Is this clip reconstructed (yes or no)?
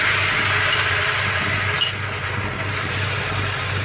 no